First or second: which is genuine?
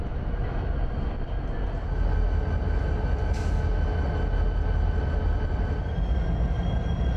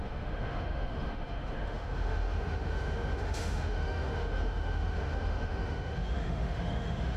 first